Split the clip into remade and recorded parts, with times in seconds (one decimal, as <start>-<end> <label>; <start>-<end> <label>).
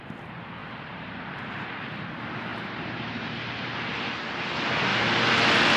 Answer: 0.0-0.6 recorded; 0.6-1.6 remade; 1.6-2.5 recorded; 2.5-3.9 remade; 3.9-5.8 recorded